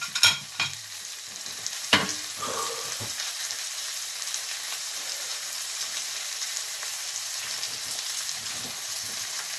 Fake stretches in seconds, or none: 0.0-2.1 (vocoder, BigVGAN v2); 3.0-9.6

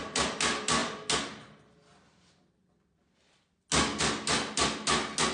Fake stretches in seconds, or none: none

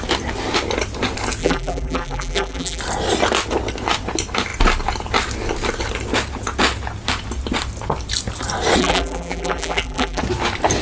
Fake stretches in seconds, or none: 1.4-2.8 (vocoder, BigVGAN v2); 8.8-10.2

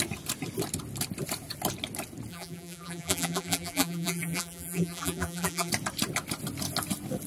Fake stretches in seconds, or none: 2.3-5.7 (vocoder, BigVGAN v2)

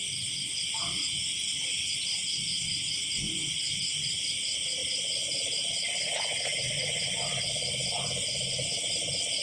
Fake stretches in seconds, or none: 0.0-0.8 (vocoder, BigVGAN v2); 2.8-4.8; 6.4-9.4

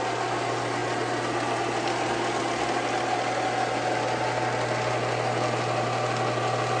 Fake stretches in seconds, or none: none

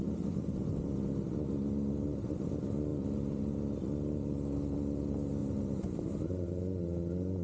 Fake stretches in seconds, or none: 2.9-3.4 (vocoder, BigVGAN v2); 5.4-6.1

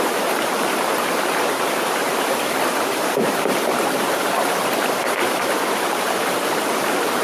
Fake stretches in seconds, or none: 0.0-2.0 (vocoder, BigVGAN v2); 2.8-7.2